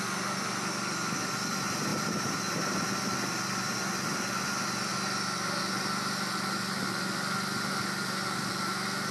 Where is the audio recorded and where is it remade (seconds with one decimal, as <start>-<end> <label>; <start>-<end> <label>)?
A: 0.0-1.9 recorded; 1.9-2.6 remade; 2.6-9.1 recorded

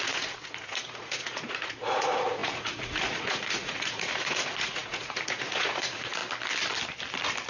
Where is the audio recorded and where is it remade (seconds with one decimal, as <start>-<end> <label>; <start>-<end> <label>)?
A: 0.0-6.2 remade; 6.2-7.5 recorded

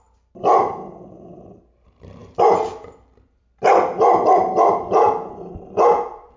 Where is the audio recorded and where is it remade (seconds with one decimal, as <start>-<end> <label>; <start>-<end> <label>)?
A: 0.0-6.4 recorded

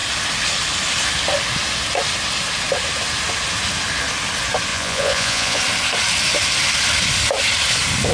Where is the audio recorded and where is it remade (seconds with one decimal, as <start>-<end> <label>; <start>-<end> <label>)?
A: 0.0-4.7 recorded; 4.7-5.6 remade; 5.6-8.1 recorded

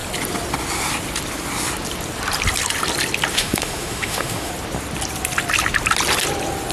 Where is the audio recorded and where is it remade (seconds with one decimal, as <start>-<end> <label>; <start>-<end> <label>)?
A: 0.0-3.3 recorded; 3.3-4.5 remade; 4.5-6.7 recorded